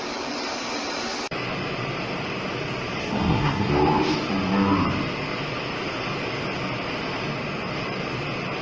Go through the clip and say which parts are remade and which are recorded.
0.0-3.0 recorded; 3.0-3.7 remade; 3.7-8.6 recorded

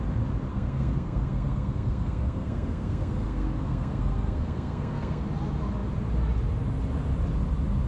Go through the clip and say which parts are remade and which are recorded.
0.0-0.5 recorded; 0.5-5.2 remade; 5.2-7.9 recorded

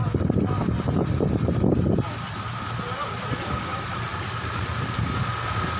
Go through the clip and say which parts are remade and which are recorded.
0.0-3.7 recorded; 3.7-4.8 remade; 4.8-5.8 recorded

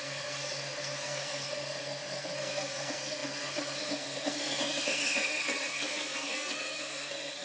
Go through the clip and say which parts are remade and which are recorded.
0.0-7.4 remade